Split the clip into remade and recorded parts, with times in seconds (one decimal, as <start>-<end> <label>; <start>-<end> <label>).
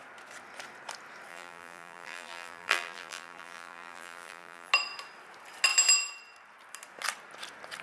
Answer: 0.0-1.3 recorded; 1.3-4.7 remade; 4.7-7.8 recorded